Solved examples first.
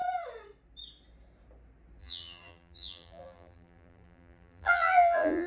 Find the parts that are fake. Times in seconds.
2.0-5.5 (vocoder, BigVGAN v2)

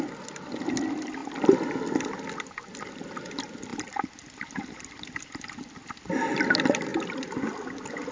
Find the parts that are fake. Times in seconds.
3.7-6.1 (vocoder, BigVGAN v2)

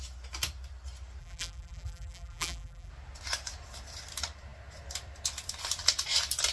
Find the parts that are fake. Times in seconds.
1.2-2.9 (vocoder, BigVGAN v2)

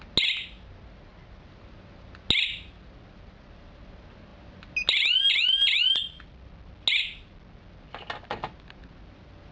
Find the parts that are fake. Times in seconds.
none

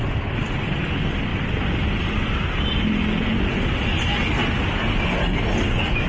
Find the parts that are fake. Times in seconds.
none

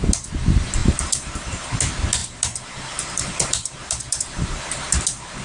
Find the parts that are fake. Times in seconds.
0.8-1.7 (vocoder, BigVGAN v2); 2.2-5.4

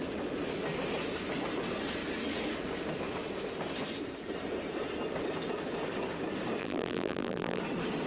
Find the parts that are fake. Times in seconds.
6.6-7.6 (vocoder, BigVGAN v2)

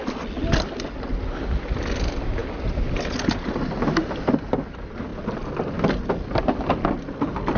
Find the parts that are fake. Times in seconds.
none